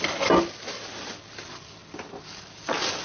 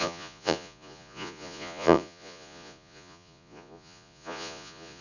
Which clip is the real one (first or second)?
first